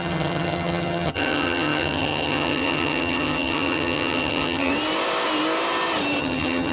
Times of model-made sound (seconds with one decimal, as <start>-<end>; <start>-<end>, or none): 0.0-4.7; 6.2-6.7